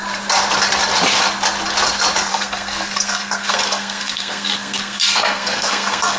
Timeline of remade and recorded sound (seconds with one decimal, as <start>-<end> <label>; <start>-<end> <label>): 0.0-2.3 recorded; 2.3-6.2 remade